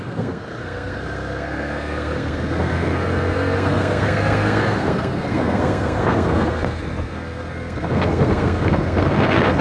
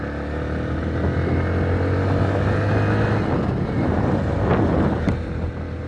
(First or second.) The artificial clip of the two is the first